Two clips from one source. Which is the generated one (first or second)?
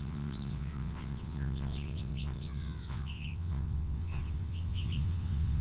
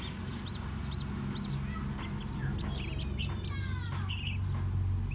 first